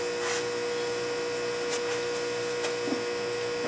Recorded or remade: recorded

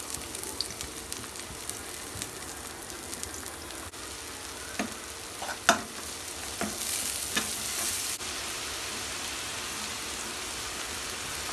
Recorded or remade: recorded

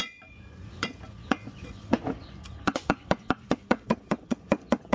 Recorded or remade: remade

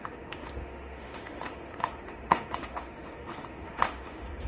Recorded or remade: remade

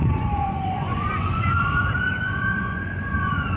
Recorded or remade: remade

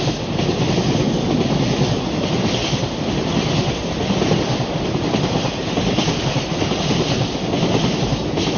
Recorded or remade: recorded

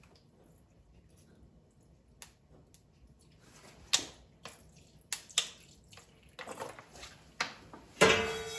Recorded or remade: recorded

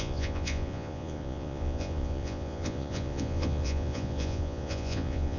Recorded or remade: remade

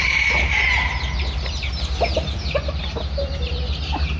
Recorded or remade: recorded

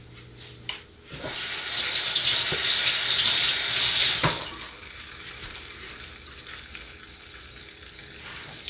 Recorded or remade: recorded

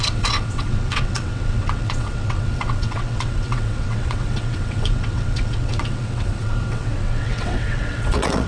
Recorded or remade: remade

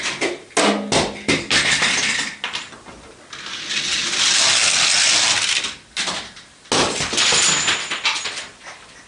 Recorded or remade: recorded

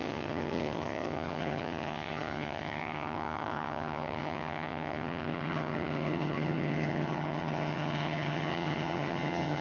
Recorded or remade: remade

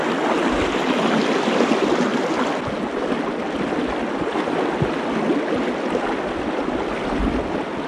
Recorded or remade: recorded